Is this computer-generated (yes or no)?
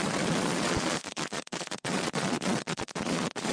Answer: yes